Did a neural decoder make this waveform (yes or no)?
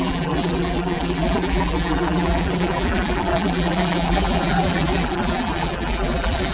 yes